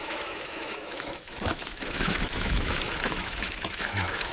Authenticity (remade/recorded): remade